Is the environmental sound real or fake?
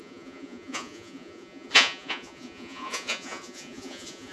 fake